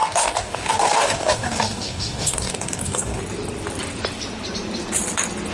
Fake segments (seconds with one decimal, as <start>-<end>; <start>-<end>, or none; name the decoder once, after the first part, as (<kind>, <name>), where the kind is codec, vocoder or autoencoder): 0.0-3.2 (codec, DAC)